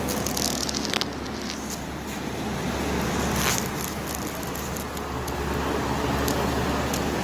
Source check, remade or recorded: recorded